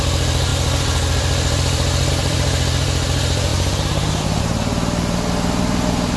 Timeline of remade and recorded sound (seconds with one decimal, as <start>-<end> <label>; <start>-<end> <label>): 0.0-6.2 remade